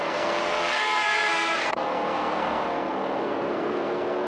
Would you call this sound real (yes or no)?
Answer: no